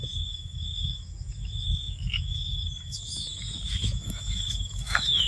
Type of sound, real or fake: fake